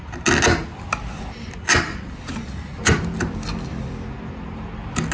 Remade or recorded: recorded